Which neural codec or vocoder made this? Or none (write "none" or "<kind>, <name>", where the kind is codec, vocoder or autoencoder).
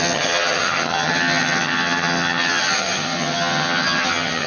vocoder, HiFi-GAN